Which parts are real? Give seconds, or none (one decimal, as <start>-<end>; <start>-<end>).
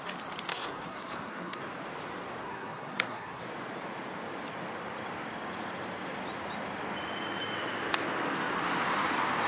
0.0-0.5; 1.6-2.4; 3.4-9.5